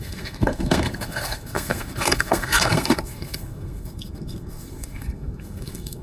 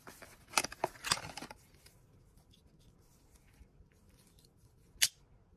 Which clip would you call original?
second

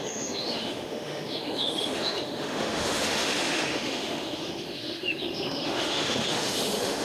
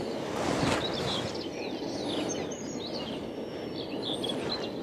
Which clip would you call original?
second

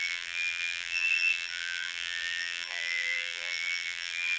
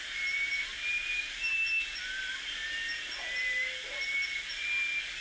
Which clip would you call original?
second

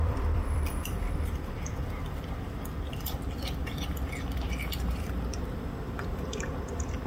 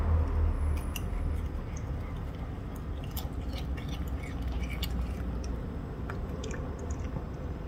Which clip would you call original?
second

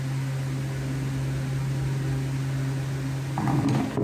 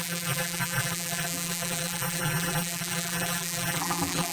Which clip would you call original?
first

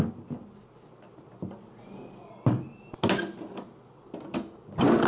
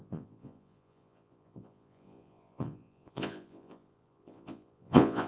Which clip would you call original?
first